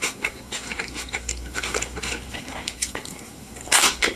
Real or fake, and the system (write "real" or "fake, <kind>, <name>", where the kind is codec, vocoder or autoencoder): fake, codec, SNAC